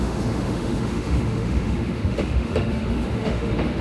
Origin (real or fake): fake